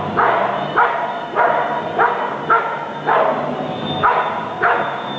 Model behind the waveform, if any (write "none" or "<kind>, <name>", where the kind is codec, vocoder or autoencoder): none